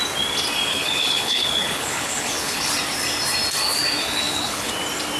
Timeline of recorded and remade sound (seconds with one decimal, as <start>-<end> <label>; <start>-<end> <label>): 0.0-0.7 recorded; 0.7-2.7 remade; 2.7-4.0 recorded; 4.0-4.7 remade; 4.7-5.2 recorded